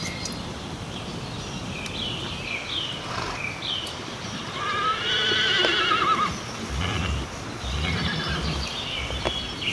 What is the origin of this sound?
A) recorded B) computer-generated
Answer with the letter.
A